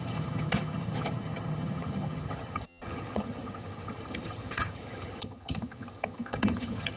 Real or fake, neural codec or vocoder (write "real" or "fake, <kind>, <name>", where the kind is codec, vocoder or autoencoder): fake, vocoder, HiFi-GAN